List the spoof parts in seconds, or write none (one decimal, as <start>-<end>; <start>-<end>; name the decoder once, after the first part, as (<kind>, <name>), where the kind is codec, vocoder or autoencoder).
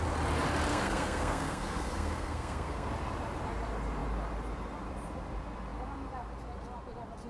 0.7-2.9 (codec, SNAC)